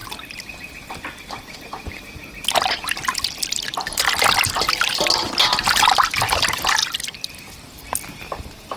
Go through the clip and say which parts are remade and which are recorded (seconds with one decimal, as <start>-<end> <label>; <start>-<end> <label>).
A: 0.0-4.1 remade; 4.1-6.8 recorded; 6.8-7.3 remade; 7.3-8.8 recorded